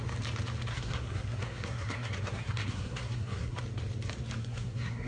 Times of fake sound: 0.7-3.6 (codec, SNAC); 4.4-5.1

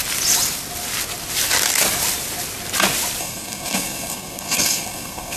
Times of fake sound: 3.2-5.4 (codec, SNAC)

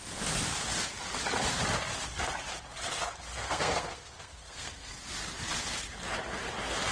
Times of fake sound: 3.3-4.9 (codec, SNAC)

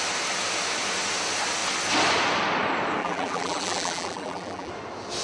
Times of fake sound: 3.0-4.7 (vocoder, BigVGAN v2)

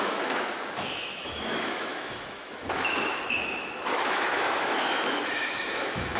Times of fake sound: 0.0-6.2 (autoencoder, DAC-VAE)

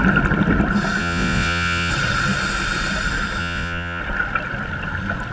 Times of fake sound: 1.0-1.9 (vocoder, Vocos); 3.4-4.0

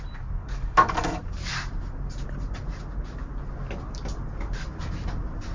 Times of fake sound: 0.4-1.2 (codec, DAC)

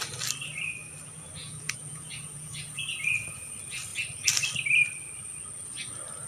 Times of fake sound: 1.4-3.5 (vocoder, Vocos)